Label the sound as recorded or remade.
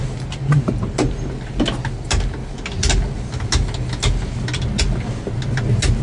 recorded